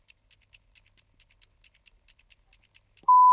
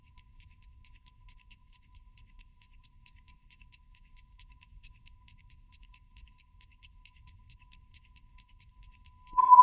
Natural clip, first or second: first